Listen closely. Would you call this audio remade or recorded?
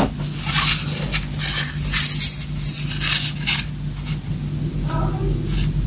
recorded